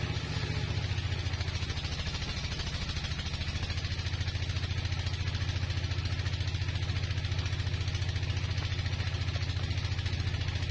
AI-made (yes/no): no